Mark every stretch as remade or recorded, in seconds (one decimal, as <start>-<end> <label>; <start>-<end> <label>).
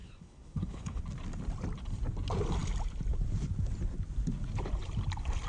0.0-1.0 remade; 1.0-5.5 recorded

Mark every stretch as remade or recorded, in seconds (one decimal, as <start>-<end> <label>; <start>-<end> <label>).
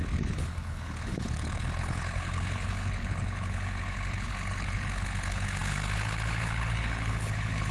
0.0-7.7 remade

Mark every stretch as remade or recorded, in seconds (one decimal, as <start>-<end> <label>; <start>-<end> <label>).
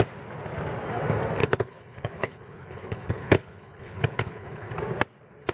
0.0-1.4 recorded; 1.4-4.7 remade; 4.7-5.5 recorded